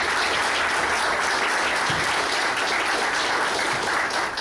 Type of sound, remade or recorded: recorded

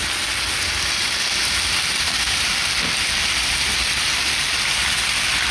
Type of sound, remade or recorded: recorded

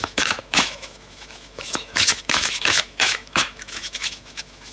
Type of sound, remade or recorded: remade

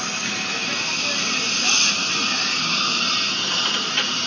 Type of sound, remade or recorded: recorded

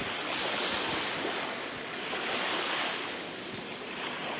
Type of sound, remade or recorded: recorded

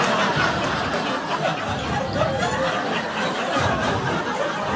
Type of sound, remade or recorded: recorded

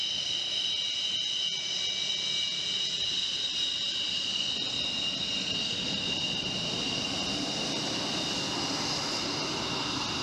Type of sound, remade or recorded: recorded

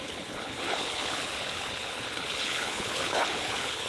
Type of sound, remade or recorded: remade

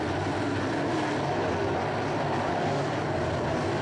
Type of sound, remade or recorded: recorded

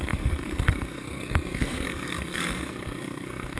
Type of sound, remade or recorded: remade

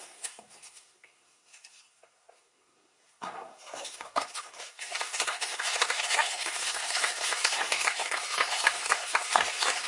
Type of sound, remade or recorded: remade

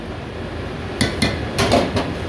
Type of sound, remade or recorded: recorded